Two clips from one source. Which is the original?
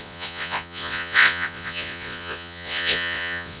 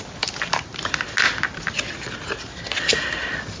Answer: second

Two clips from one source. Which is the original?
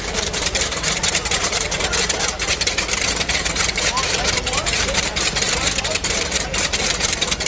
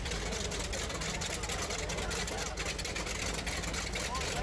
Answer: second